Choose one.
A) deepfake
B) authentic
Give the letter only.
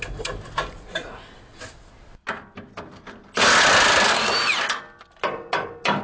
B